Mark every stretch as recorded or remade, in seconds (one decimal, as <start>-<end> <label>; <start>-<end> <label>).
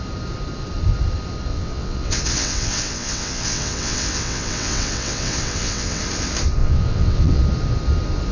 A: 0.0-1.5 recorded; 1.5-6.0 remade; 6.0-6.6 recorded; 6.6-7.4 remade; 7.4-8.3 recorded